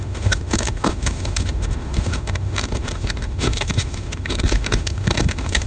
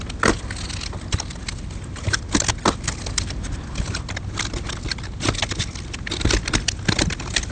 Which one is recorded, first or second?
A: second